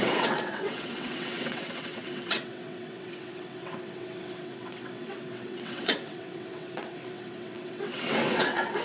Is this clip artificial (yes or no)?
yes